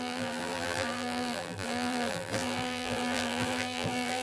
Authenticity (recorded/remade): remade